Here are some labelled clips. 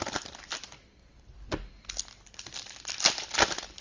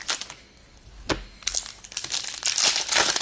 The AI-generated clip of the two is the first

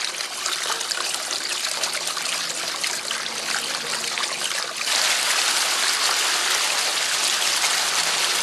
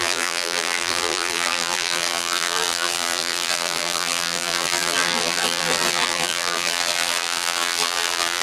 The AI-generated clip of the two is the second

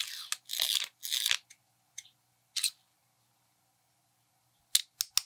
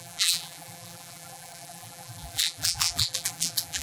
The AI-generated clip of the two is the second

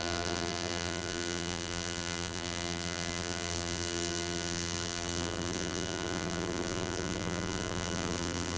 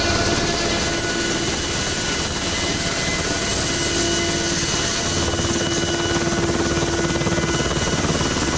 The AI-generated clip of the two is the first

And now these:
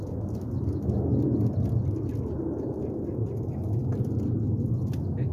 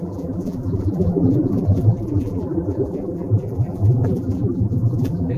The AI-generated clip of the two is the second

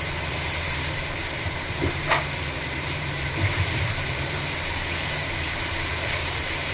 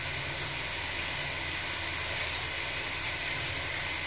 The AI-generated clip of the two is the first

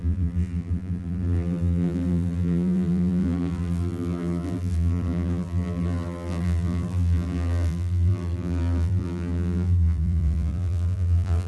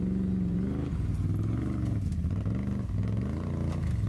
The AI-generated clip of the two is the first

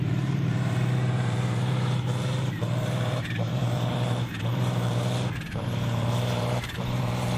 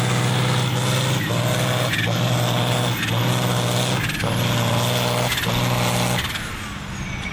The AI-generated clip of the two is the first